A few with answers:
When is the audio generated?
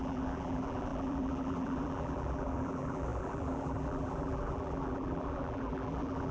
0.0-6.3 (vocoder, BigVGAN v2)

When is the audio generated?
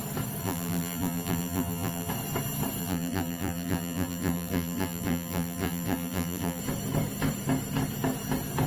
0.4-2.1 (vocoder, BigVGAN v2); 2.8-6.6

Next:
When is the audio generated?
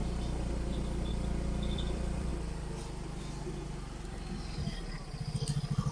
1.1-2.3 (vocoder, BigVGAN v2)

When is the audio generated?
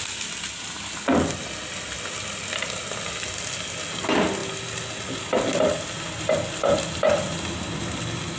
none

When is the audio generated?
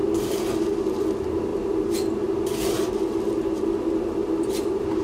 none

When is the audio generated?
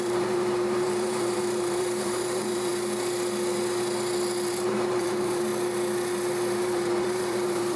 0.0-2.7 (vocoder, BigVGAN v2); 4.5-5.5; 6.6-7.8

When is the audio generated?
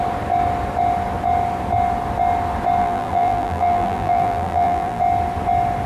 2.8-5.0 (vocoder, BigVGAN v2)